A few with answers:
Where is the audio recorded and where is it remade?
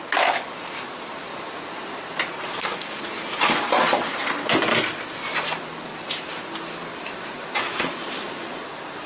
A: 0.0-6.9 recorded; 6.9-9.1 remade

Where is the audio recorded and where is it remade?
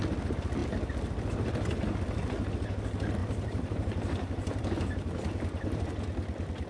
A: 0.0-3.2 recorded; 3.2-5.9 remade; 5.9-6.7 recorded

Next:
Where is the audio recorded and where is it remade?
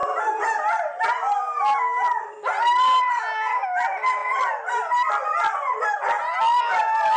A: 0.0-4.2 recorded; 4.2-5.1 remade; 5.1-7.2 recorded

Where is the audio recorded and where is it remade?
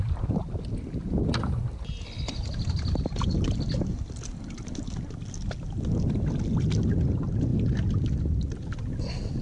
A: 0.0-7.5 recorded; 7.5-8.2 remade; 8.2-9.4 recorded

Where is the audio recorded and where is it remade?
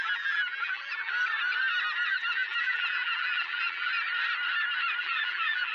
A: 0.0-1.1 remade; 1.1-2.0 recorded; 2.0-3.9 remade; 3.9-5.0 recorded; 5.0-5.7 remade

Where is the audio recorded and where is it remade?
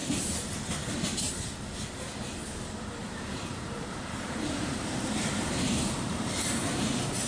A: 0.0-3.0 recorded; 3.0-7.3 remade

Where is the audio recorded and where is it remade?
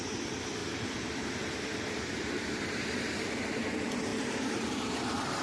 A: 0.0-0.6 recorded; 0.6-2.4 remade; 2.4-4.1 recorded; 4.1-5.0 remade; 5.0-5.4 recorded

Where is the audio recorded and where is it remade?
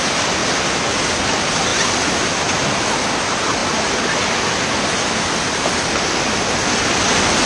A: 0.0-0.4 remade; 0.4-1.2 recorded; 1.2-1.7 remade; 1.7-2.9 recorded; 2.9-3.6 remade; 3.6-5.7 recorded; 5.7-7.5 remade